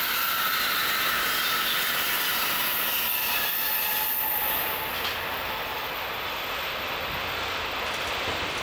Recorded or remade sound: recorded